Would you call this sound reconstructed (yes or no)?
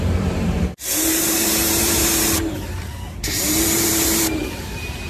yes